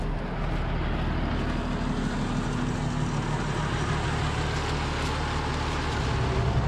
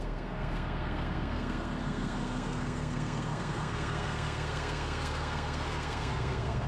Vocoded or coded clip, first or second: second